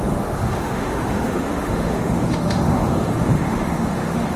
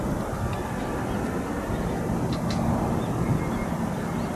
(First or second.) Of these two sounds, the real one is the second